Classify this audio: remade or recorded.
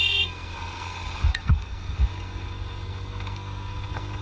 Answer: remade